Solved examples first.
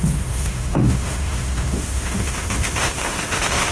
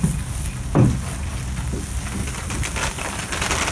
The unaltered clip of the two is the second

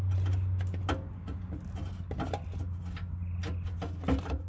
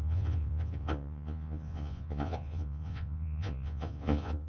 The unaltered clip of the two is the first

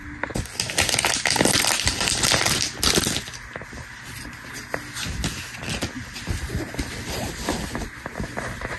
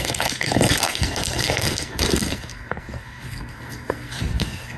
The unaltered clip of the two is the first